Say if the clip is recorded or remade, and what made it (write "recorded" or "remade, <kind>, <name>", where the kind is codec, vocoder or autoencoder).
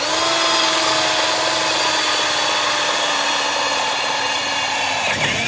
recorded